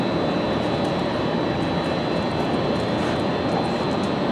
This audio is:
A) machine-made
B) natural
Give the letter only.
B